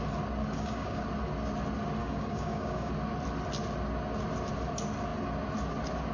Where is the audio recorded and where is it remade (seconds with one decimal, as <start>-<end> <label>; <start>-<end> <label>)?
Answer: 0.0-0.4 recorded; 0.4-1.0 remade; 1.0-2.0 recorded; 2.0-2.9 remade; 2.9-6.1 recorded